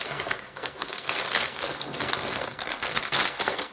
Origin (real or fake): fake